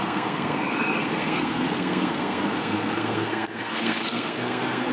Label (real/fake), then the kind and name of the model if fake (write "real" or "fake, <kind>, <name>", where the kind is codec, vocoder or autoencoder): fake, codec, SNAC